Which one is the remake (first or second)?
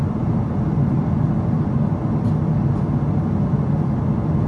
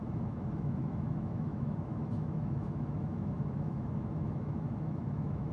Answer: second